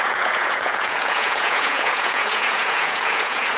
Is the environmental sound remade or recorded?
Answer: remade